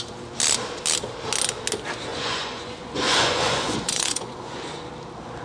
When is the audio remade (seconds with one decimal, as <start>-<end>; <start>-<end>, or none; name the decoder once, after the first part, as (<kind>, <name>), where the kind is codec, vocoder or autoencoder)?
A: 2.1-4.9 (vocoder, Vocos)